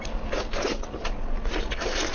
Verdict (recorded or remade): recorded